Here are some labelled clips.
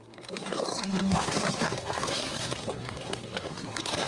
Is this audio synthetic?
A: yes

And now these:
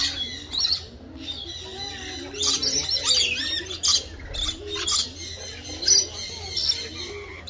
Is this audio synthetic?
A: no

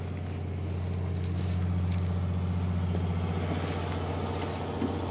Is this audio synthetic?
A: no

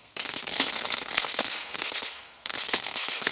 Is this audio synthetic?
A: yes